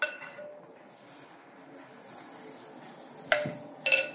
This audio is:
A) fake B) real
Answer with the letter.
B